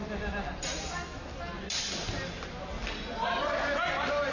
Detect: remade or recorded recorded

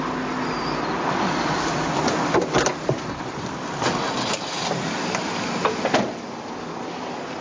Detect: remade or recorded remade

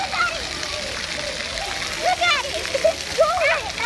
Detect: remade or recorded recorded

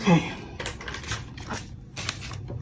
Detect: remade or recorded recorded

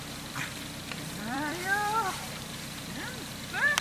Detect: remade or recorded remade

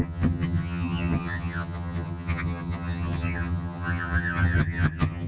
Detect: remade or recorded remade